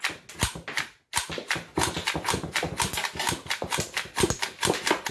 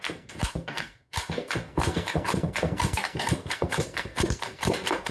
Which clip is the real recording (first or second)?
first